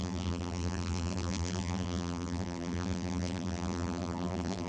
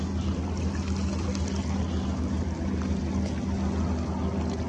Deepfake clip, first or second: first